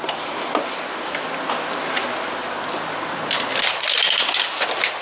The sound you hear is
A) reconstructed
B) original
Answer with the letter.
B